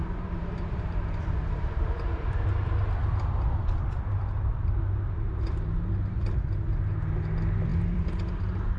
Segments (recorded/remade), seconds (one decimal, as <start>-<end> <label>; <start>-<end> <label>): 0.0-4.7 remade; 4.7-7.7 recorded; 7.7-8.3 remade; 8.3-8.8 recorded